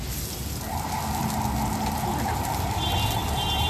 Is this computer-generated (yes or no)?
no